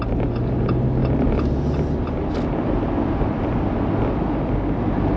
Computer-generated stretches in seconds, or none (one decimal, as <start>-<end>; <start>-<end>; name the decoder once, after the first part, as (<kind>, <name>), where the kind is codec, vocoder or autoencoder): none